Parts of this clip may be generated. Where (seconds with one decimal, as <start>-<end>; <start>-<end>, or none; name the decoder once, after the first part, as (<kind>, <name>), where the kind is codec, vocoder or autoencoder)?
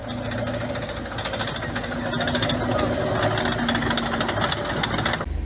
none